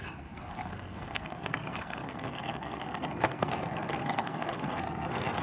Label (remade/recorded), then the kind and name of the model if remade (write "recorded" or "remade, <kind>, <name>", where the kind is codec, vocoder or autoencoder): remade, codec, SNAC